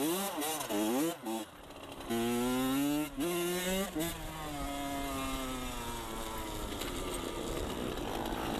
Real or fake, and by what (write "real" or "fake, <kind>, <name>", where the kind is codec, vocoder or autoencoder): real